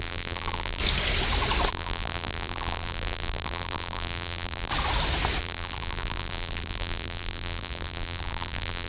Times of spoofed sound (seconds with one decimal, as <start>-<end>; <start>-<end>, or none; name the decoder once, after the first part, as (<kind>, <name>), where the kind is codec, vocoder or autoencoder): 0.0-0.8 (vocoder, BigVGAN v2); 1.7-4.7; 5.4-8.9